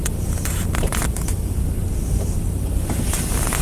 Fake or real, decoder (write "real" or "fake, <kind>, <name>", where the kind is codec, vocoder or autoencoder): real